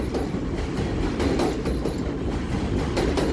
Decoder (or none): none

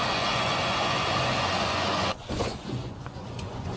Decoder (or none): vocoder, Vocos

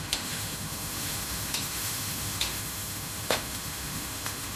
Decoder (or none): autoencoder, DAC-VAE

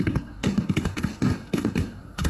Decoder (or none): codec, SNAC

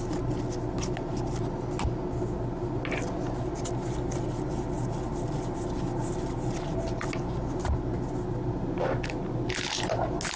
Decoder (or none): none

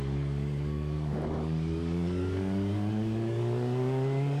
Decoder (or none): codec, DAC